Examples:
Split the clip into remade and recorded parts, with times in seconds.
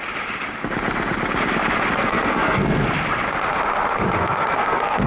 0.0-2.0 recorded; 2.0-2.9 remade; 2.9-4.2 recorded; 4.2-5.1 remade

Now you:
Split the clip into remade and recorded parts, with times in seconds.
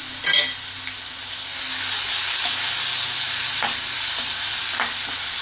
0.0-1.4 recorded; 1.4-4.6 remade; 4.6-5.4 recorded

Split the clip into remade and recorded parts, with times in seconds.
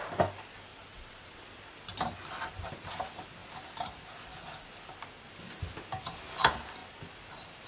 0.0-0.7 recorded; 0.7-1.4 remade; 1.4-7.7 recorded